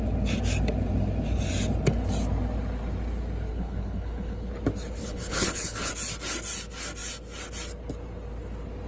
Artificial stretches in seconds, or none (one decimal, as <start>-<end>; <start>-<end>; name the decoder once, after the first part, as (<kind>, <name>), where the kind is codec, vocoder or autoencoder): 3.5-4.5 (codec, HILCodec); 5.0-5.9